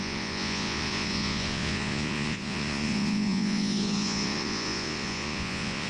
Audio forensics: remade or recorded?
remade